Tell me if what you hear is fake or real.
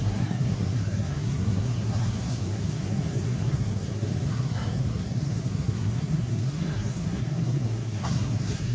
fake